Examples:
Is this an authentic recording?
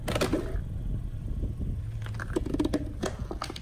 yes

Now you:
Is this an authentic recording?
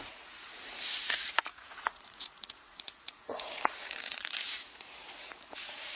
no